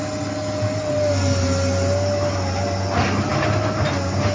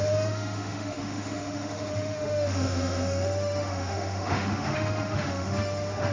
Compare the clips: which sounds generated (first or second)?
second